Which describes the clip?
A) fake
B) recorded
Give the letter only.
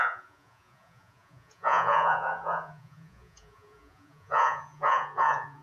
A